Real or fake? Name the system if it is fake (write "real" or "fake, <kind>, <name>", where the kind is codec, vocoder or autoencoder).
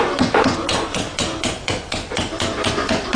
fake, vocoder, Vocos